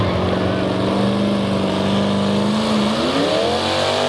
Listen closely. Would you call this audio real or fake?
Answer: real